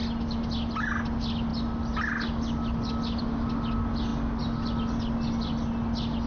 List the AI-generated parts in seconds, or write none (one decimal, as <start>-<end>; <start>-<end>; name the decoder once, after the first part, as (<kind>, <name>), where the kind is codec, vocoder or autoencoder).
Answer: none